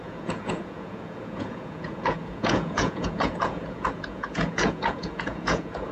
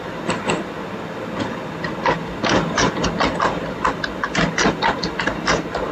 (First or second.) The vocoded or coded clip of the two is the first